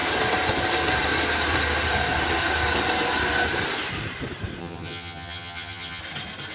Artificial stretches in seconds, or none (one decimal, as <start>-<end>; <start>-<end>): 4.6-6.0